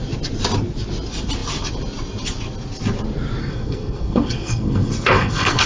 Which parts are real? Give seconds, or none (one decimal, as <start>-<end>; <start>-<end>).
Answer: 0.0-3.4